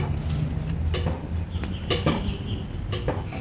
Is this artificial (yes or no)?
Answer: no